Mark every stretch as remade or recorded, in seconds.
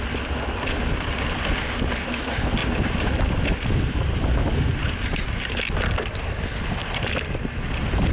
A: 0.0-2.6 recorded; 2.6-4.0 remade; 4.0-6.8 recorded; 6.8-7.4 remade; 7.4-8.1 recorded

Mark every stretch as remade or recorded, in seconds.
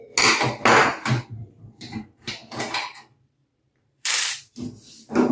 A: 0.0-1.4 recorded; 1.4-4.5 remade; 4.5-5.3 recorded